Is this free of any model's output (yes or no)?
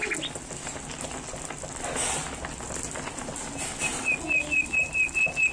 yes